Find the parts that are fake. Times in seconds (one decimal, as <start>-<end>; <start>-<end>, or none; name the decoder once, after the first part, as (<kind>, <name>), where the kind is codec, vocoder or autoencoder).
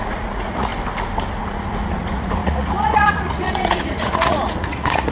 0.0-0.7 (vocoder, Vocos); 1.4-5.1